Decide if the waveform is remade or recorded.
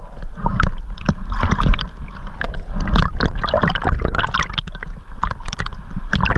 recorded